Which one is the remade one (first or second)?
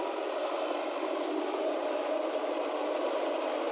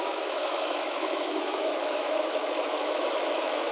second